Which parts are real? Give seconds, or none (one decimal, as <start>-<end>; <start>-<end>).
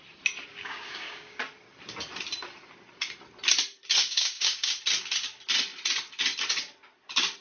0.0-0.5; 1.4-4.0; 4.7-7.4